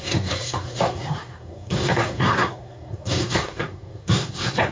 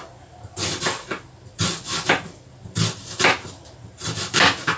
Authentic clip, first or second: second